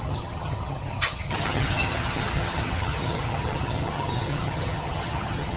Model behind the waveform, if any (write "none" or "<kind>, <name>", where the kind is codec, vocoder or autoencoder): vocoder, HiFi-GAN